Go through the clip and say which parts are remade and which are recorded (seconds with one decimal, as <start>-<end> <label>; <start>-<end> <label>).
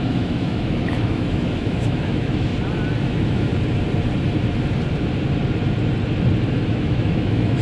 0.0-2.5 remade; 2.5-3.0 recorded; 3.0-3.5 remade; 3.5-6.5 recorded; 6.5-7.6 remade